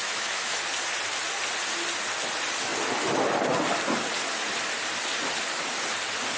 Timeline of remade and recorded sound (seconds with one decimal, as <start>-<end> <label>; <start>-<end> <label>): 0.0-0.6 remade; 0.6-6.4 recorded